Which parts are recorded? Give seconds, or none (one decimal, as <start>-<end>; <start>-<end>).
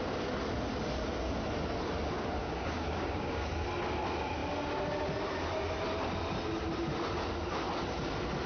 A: 0.0-2.4; 3.5-8.5